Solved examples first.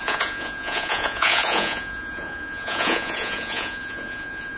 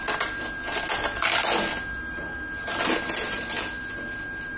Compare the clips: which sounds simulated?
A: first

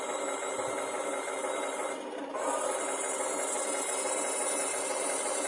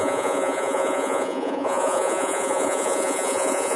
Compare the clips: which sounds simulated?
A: second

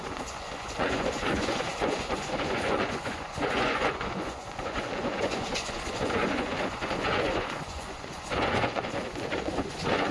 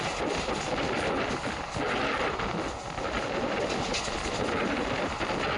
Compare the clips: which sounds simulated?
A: first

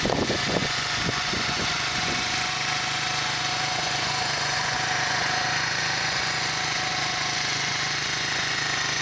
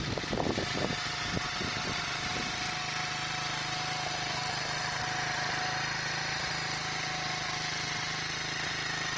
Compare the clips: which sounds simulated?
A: first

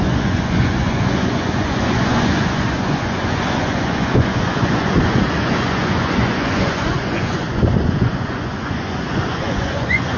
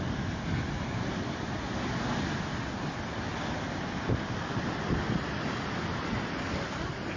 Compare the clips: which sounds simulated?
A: first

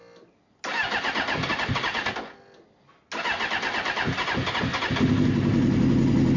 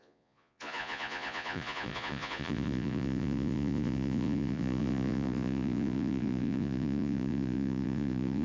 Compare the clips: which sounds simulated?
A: second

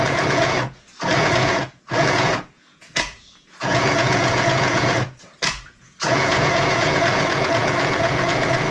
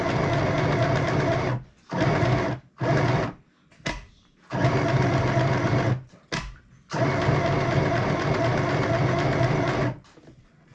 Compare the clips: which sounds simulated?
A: first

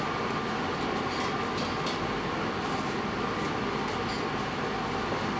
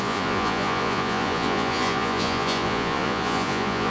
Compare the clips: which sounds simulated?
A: second